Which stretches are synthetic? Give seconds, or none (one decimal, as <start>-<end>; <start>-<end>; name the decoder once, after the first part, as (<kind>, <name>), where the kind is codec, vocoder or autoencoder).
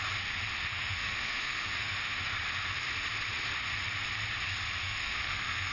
0.6-2.2 (autoencoder, DAC-VAE); 4.8-5.7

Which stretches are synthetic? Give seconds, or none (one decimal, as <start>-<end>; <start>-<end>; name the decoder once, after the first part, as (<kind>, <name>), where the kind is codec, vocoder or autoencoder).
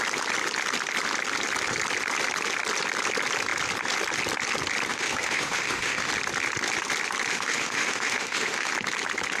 4.9-6.1 (autoencoder, DAC-VAE); 7.3-8.7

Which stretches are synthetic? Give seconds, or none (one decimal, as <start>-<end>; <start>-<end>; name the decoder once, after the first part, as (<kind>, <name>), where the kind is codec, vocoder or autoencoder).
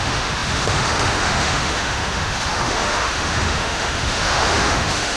0.0-5.2 (autoencoder, DAC-VAE)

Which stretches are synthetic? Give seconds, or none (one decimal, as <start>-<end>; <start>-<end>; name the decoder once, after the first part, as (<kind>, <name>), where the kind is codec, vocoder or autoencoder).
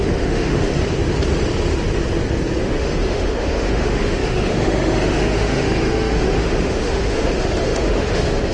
0.0-0.7 (autoencoder, DAC-VAE); 2.6-8.5